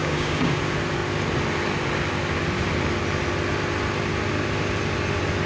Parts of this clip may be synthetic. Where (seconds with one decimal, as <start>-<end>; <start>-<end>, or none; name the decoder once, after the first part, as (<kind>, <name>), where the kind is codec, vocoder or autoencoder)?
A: 0.0-0.6 (codec, DAC)